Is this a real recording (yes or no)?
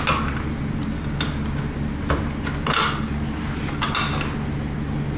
yes